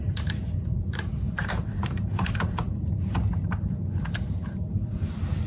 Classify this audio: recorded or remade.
remade